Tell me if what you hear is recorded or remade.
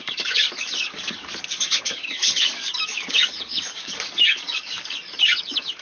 remade